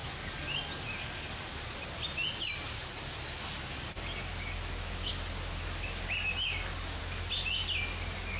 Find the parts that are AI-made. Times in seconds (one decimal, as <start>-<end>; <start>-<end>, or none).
none